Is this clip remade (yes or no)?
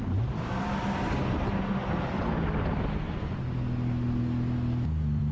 no